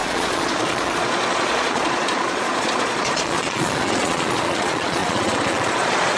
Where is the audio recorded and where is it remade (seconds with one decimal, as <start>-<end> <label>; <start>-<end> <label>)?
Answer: 0.0-6.2 remade